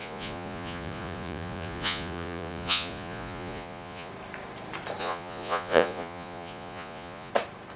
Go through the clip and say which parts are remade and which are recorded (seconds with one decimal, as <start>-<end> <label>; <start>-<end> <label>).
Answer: 0.0-4.1 remade; 4.1-5.0 recorded; 5.0-7.3 remade; 7.3-7.8 recorded